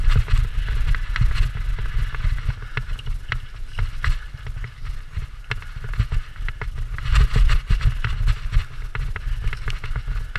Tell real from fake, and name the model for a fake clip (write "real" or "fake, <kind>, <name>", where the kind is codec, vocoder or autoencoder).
real